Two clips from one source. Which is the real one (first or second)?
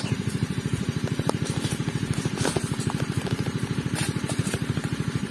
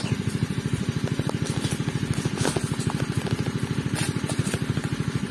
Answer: second